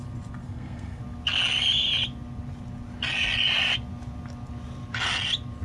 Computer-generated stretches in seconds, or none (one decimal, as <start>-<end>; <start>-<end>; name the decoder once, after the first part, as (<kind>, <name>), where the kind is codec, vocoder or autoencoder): 0.4-1.0 (codec, SNAC)